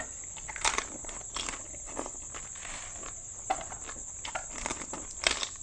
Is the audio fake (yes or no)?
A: no